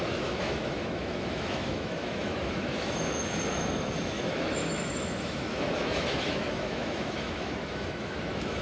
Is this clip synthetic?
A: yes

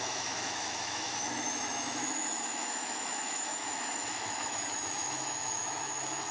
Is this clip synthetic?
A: yes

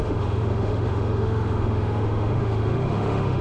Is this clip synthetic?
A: yes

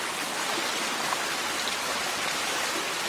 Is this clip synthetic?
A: no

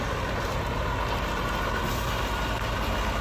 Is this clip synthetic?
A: no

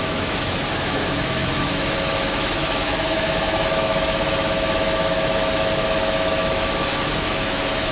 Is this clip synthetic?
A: yes